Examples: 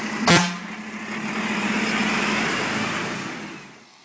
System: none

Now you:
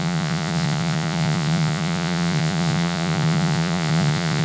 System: vocoder, Vocos